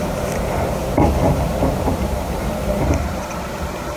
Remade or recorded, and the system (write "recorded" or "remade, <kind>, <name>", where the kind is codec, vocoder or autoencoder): remade, vocoder, BigVGAN v2